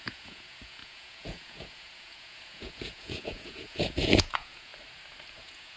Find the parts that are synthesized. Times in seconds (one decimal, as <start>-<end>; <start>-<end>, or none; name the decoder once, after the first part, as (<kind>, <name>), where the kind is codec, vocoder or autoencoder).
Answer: 0.0-4.7 (vocoder, Vocos); 5.3-5.8